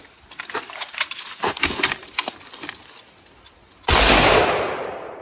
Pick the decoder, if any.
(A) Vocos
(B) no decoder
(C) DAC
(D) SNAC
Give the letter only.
B